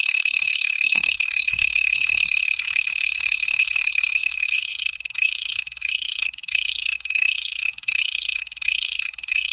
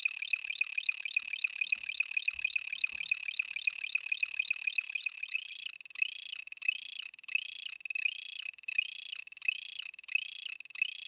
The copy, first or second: first